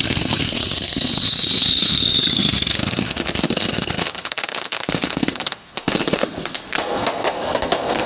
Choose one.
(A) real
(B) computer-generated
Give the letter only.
B